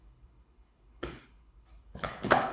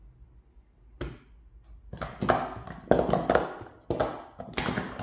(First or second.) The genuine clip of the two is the second